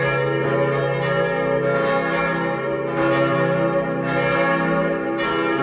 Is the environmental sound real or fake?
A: real